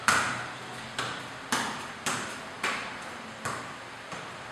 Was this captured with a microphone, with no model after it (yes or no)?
yes